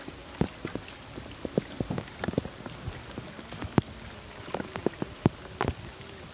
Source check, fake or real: real